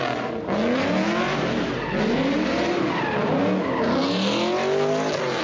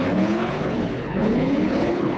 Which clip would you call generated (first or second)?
second